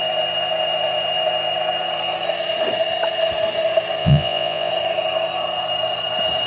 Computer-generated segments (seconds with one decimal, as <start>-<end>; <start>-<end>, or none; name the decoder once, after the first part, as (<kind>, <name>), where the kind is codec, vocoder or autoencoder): 4.0-4.7 (vocoder, Vocos)